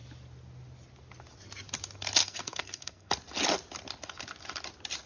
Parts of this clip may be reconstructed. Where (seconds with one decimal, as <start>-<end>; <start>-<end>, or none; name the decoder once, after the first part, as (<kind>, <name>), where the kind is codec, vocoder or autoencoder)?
2.2-3.1 (codec, SNAC)